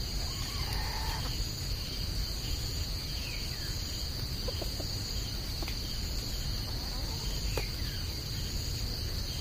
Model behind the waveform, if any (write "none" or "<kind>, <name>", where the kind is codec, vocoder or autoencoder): none